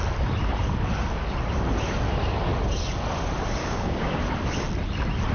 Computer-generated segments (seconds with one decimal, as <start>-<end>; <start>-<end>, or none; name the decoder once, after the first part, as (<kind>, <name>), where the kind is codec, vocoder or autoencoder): 3.6-4.2 (codec, DAC)